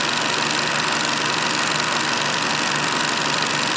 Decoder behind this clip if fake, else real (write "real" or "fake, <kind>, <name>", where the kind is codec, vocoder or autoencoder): real